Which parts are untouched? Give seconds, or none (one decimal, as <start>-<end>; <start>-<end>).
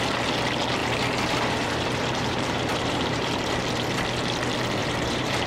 0.0-0.8; 3.5-4.8